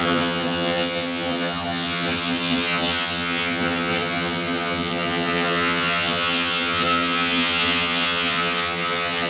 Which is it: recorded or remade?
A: remade